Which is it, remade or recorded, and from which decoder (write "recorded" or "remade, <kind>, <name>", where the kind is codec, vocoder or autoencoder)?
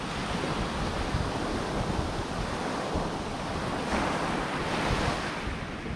recorded